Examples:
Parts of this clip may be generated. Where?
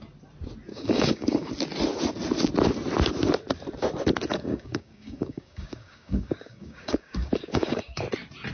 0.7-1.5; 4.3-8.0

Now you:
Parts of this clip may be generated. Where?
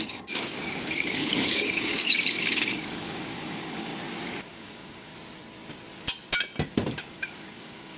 0.0-3.9; 4.5-5.1; 6.9-8.0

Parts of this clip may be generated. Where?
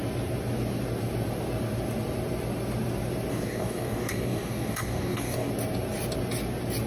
3.3-5.5